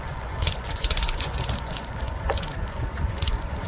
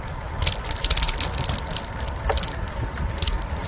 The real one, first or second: second